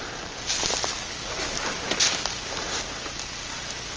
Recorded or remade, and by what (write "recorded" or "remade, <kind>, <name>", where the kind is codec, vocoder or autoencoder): recorded